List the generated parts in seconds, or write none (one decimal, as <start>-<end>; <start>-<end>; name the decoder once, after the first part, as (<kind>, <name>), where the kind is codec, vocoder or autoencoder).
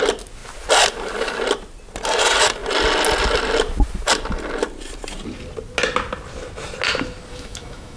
7.3-8.0 (autoencoder, DAC-VAE)